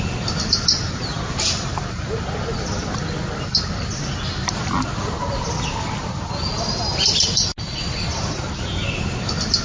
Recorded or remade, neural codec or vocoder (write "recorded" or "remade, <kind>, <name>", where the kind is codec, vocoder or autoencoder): recorded